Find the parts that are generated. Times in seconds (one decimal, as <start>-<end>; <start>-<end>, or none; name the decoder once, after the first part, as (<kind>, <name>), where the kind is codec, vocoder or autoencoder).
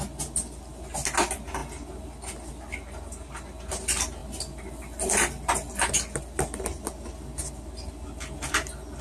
none